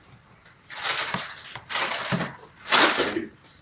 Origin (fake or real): real